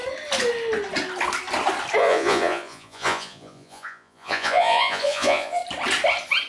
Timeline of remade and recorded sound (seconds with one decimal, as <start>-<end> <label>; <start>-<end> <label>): 0.0-2.0 recorded; 2.0-5.6 remade; 5.6-6.5 recorded